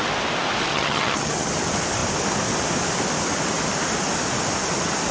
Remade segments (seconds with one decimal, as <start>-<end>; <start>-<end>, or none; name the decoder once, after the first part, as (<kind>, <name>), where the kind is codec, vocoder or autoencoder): 0.7-1.5 (vocoder, HiFi-GAN)